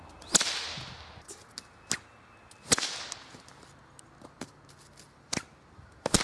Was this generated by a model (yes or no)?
no